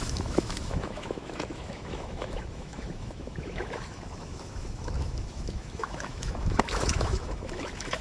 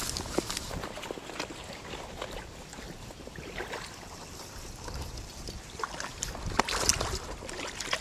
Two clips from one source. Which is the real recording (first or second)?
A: second